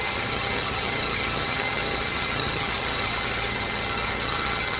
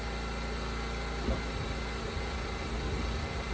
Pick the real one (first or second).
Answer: second